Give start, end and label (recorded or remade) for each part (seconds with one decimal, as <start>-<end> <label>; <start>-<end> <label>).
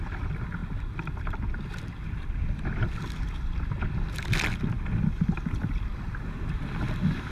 0.0-7.3 recorded